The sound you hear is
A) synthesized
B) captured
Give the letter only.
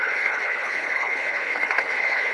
A